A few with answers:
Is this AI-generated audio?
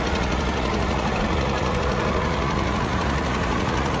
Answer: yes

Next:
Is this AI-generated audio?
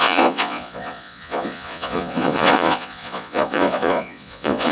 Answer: yes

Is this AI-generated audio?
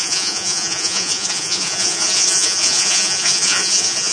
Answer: yes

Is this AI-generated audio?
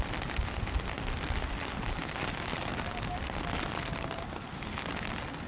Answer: no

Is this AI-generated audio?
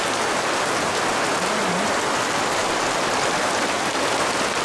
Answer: no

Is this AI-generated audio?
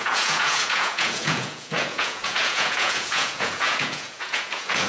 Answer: yes